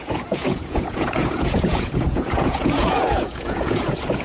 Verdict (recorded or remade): remade